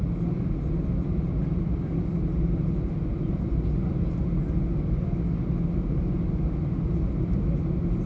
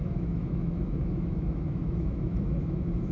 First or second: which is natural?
first